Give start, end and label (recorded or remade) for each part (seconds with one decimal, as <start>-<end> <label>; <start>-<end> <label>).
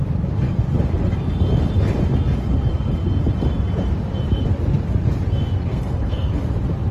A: 0.0-5.7 recorded; 5.7-6.4 remade; 6.4-6.9 recorded